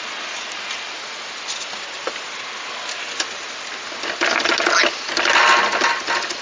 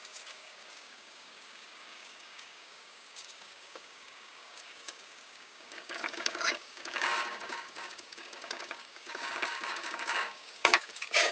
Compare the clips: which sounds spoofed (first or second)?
second